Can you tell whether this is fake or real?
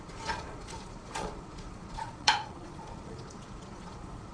fake